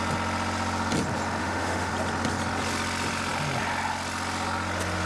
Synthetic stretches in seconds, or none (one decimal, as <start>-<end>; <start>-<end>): 1.4-1.9